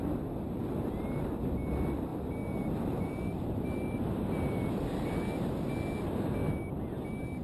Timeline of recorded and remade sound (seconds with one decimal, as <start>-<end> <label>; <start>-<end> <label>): 0.0-7.4 recorded